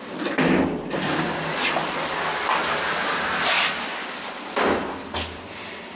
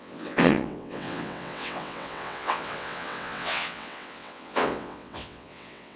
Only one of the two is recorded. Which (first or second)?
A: first